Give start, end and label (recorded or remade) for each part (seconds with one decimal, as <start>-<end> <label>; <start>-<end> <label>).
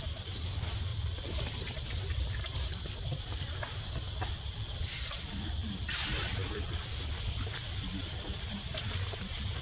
0.0-0.9 remade; 0.9-4.3 recorded; 4.3-9.6 remade